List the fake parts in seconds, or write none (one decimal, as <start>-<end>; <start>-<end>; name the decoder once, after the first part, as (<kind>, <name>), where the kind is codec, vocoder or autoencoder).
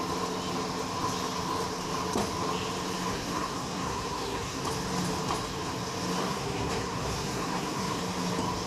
3.1-4.6 (codec, SNAC); 6.2-8.0